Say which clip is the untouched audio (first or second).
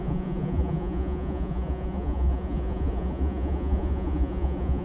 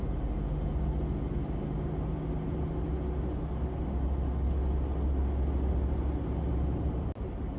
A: second